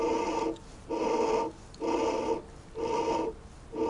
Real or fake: real